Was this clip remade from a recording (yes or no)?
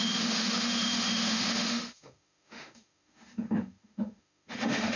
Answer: yes